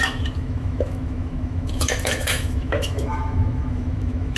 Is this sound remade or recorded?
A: remade